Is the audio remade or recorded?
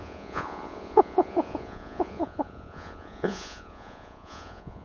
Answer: remade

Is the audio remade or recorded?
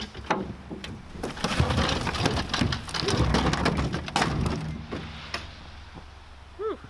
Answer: recorded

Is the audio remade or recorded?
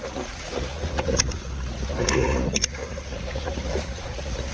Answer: remade